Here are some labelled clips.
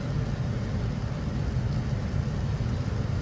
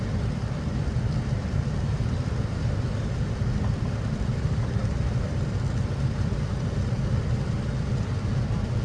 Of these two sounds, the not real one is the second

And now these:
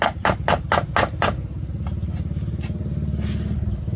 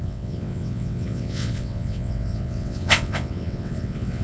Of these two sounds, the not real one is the second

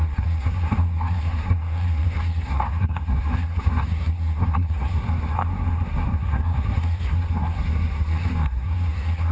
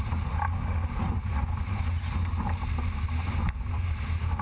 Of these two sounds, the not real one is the first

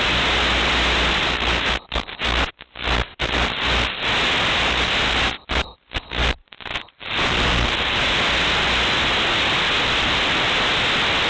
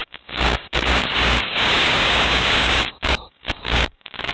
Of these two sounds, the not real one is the second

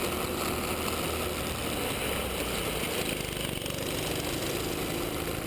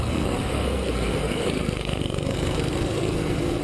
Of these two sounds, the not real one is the second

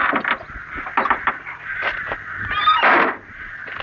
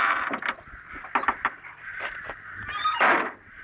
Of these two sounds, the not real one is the second